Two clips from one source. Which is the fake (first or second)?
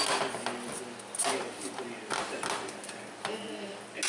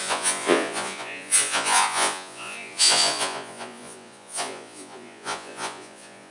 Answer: second